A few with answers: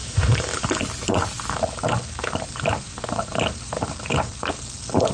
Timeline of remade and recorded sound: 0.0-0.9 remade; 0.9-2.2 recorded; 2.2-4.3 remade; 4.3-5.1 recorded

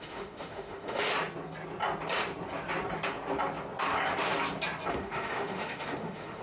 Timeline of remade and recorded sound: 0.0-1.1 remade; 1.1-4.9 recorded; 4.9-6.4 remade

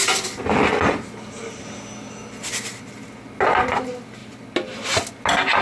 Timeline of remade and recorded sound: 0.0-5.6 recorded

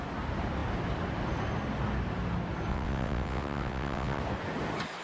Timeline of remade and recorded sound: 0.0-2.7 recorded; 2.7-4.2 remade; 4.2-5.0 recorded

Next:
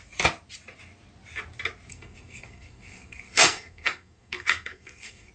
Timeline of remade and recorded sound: 0.0-1.9 recorded; 1.9-5.3 remade

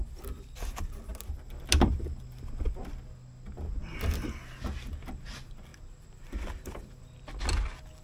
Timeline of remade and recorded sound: 0.0-8.0 recorded